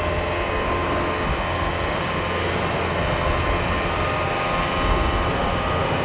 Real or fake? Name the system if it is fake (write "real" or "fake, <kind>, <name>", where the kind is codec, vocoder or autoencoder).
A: real